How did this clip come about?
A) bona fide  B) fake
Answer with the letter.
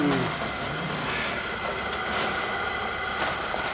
A